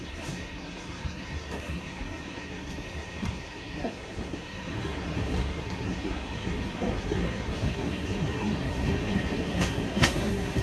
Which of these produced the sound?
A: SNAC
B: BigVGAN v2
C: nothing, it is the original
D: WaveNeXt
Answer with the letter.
A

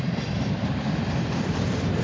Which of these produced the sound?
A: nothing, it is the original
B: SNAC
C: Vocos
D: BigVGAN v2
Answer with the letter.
D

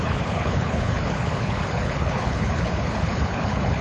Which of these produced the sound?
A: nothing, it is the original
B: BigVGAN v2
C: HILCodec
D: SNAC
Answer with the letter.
C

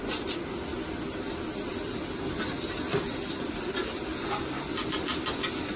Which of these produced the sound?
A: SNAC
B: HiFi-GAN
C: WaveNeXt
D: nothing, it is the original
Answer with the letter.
D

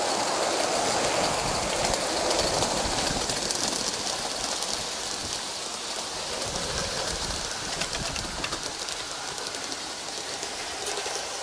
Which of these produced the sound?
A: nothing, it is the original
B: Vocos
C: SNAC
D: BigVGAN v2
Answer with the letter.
A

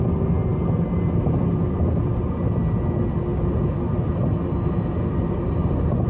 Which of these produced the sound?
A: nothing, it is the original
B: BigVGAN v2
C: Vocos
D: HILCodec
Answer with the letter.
A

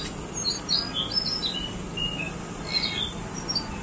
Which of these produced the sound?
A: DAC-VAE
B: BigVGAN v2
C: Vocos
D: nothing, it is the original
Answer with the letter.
D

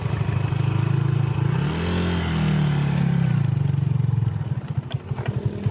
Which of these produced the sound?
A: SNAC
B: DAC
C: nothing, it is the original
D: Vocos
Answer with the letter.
C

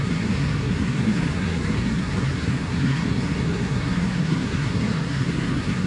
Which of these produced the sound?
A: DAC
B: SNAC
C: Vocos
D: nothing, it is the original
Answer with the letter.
B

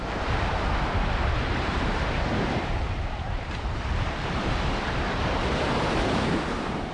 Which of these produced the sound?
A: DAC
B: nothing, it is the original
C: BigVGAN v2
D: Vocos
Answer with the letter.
C